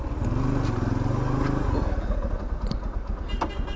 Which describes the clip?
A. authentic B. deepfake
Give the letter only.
A